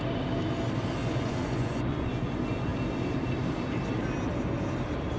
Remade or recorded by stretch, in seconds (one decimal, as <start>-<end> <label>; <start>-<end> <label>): 0.0-1.0 recorded; 1.0-2.1 remade; 2.1-5.2 recorded